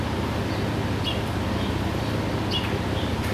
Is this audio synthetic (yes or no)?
no